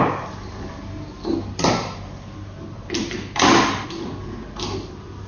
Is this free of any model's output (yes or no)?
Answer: yes